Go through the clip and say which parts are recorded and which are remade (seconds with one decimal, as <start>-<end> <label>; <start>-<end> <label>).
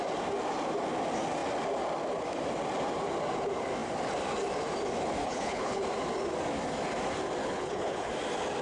0.0-5.2 recorded; 5.2-5.8 remade; 5.8-7.4 recorded; 7.4-8.1 remade; 8.1-8.6 recorded